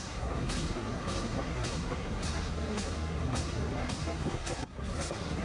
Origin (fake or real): fake